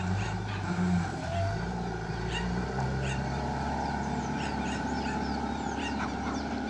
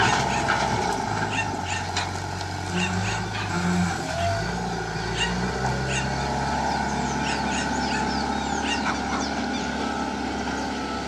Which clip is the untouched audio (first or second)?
second